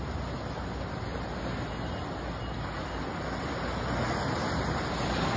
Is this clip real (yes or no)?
yes